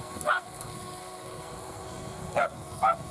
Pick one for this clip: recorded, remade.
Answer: remade